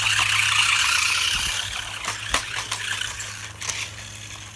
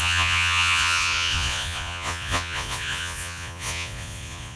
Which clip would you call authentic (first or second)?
first